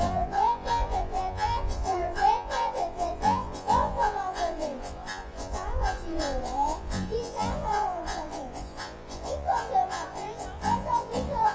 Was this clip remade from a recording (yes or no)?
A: yes